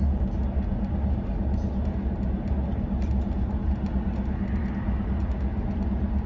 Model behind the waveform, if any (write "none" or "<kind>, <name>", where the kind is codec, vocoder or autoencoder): none